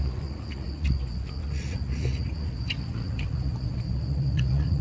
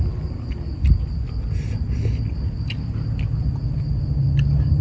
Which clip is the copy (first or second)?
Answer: first